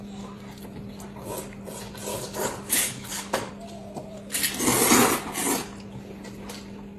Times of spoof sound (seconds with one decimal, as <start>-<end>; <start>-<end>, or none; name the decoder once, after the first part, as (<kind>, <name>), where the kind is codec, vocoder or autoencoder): 2.1-3.5 (codec, DAC)